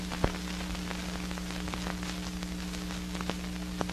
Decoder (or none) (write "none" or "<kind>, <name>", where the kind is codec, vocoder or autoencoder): none